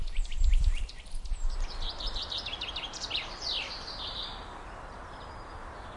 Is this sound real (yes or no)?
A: no